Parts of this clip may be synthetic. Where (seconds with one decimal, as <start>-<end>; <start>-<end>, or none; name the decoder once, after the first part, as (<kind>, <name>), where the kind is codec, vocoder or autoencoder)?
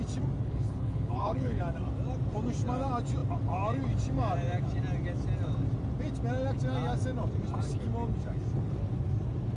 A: 0.4-1.6 (codec, HILCodec)